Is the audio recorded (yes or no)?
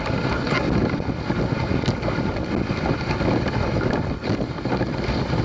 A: yes